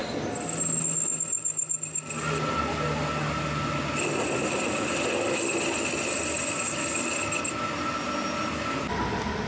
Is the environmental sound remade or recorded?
recorded